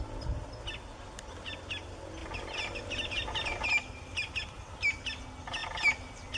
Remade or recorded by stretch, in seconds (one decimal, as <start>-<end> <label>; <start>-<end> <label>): 0.0-6.4 recorded